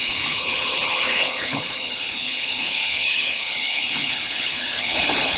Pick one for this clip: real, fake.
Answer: fake